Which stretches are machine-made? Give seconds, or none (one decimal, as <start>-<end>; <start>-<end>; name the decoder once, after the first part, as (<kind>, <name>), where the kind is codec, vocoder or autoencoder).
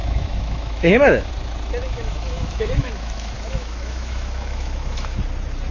0.0-1.3 (autoencoder, DAC-VAE); 1.8-5.2